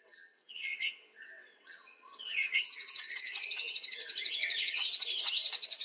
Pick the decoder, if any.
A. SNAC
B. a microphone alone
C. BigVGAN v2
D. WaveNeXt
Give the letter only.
D